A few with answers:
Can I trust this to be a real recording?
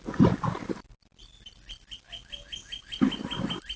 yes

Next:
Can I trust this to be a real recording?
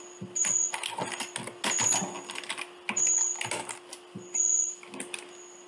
yes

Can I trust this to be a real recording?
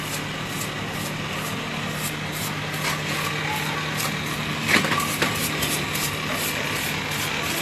yes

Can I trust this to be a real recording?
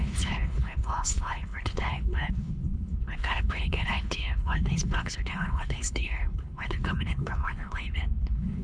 no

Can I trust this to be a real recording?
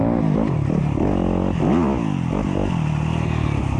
yes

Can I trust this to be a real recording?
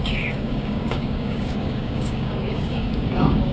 no